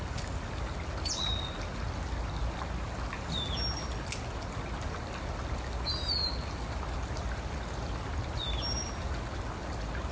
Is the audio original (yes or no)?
yes